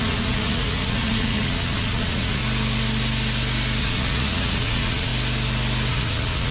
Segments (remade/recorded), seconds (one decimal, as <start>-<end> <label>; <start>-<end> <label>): 0.0-2.4 remade; 2.4-3.8 recorded; 3.8-5.1 remade; 5.1-5.9 recorded; 5.9-6.5 remade